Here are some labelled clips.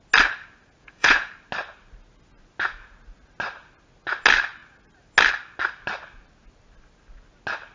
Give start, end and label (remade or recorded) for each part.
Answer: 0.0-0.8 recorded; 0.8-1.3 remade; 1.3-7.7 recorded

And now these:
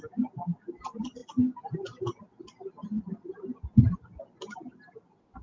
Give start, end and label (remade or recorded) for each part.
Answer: 0.0-5.4 recorded

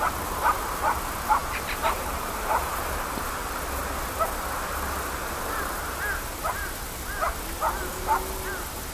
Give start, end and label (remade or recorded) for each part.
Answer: 0.0-1.4 recorded; 1.4-3.1 remade; 3.1-8.9 recorded

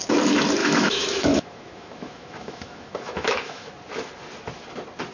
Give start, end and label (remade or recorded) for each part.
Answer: 0.0-0.6 recorded; 0.6-3.7 remade; 3.7-5.1 recorded

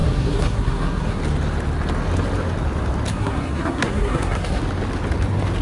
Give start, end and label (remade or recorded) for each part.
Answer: 0.0-1.2 remade; 1.2-3.1 recorded; 3.1-4.6 remade; 4.6-5.6 recorded

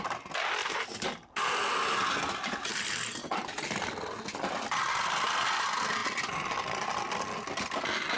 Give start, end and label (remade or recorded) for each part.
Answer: 0.0-0.6 recorded; 0.6-1.6 remade; 1.6-8.2 recorded